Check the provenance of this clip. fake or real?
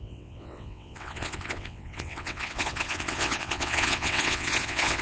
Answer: fake